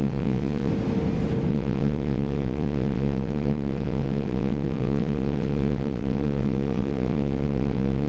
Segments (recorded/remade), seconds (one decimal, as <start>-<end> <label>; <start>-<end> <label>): 0.0-0.7 remade; 0.7-1.5 recorded; 1.5-8.1 remade